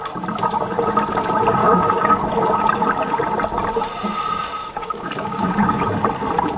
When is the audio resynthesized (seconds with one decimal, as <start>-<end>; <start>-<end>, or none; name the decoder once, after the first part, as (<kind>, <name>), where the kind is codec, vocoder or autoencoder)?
1.6-2.3 (codec, DAC); 4.6-5.8